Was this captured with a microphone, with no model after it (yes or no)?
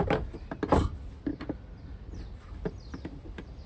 yes